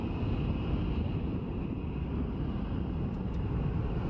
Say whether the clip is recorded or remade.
recorded